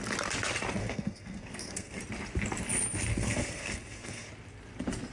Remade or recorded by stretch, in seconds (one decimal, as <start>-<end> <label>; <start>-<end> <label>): 0.0-0.8 recorded; 0.8-2.0 remade; 2.0-3.1 recorded; 3.1-4.3 remade; 4.3-5.1 recorded